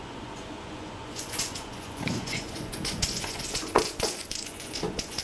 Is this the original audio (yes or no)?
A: no